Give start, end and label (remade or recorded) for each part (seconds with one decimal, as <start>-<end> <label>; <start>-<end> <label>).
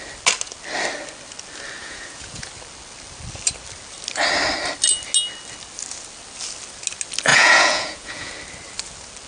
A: 0.0-1.8 recorded; 1.8-2.5 remade; 2.5-7.3 recorded; 7.3-8.3 remade; 8.3-9.3 recorded